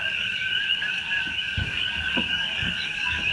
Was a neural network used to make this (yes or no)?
yes